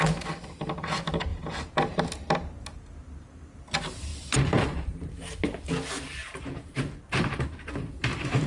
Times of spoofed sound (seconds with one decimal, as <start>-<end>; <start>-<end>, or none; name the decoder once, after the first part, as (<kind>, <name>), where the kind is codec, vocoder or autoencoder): 1.3-2.0 (vocoder, BigVGAN v2); 4.1-5.2; 6.2-8.5